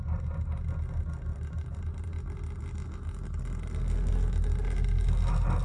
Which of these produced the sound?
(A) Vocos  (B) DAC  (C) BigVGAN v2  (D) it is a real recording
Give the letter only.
D